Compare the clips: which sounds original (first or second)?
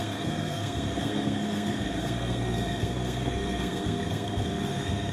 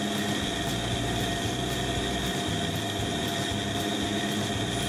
second